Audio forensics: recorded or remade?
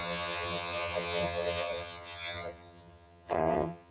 remade